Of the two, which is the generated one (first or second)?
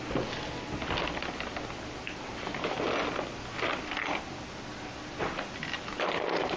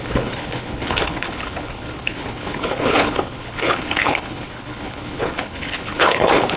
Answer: second